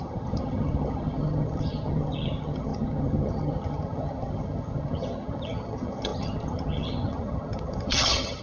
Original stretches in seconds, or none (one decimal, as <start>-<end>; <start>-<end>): none